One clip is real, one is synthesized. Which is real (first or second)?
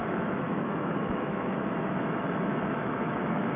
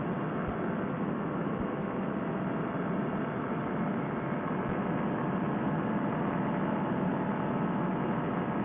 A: second